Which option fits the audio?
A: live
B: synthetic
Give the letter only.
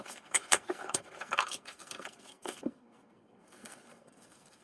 B